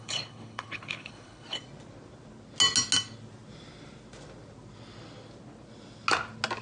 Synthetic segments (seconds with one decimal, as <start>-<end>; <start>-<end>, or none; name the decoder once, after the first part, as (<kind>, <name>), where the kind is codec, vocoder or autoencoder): 0.0-1.6 (codec, HILCodec)